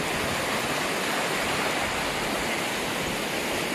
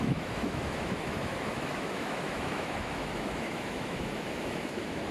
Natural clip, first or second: first